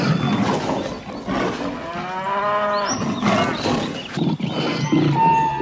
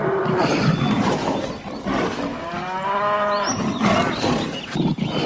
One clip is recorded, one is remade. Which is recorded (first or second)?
first